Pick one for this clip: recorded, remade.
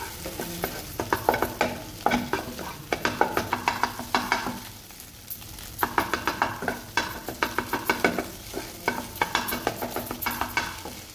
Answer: recorded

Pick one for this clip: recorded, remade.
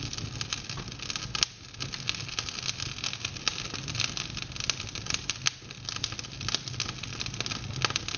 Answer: recorded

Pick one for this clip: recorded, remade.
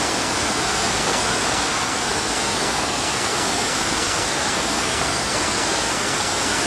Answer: remade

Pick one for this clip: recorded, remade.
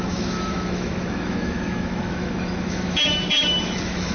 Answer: remade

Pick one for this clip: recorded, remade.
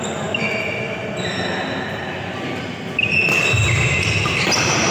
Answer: recorded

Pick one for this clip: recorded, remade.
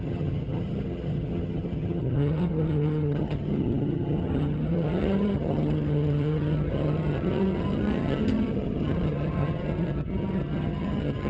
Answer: remade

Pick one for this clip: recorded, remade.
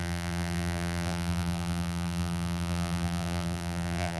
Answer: remade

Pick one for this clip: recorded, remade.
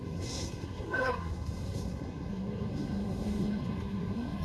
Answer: remade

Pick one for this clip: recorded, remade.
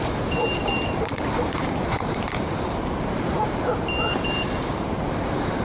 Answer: remade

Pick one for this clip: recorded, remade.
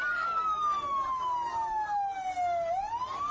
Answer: recorded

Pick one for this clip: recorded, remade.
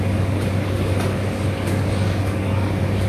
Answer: remade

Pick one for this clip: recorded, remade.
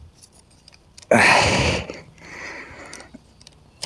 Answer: remade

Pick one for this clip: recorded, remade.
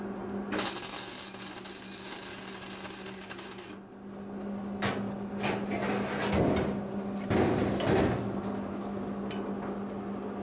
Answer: recorded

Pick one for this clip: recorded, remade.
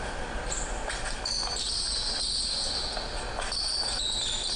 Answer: recorded